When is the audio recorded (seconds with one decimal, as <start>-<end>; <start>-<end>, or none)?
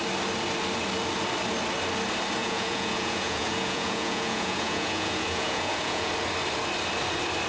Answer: 0.0-2.4; 6.1-7.5